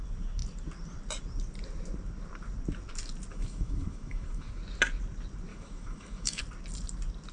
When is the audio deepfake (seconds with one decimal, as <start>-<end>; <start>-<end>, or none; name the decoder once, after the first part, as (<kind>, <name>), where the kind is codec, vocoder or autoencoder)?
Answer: 3.3-4.6 (autoencoder, DAC-VAE); 5.5-6.4